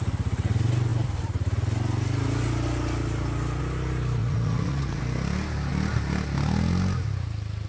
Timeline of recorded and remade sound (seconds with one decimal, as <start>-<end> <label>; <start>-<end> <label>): 0.0-4.2 recorded; 4.2-5.0 remade; 5.0-7.7 recorded